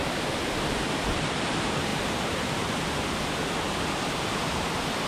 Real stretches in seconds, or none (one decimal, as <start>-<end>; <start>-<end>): 1.9-5.1